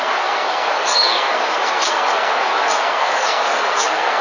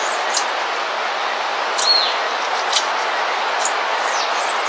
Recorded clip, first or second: second